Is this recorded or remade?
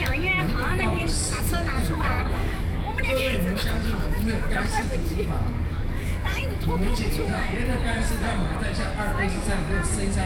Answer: remade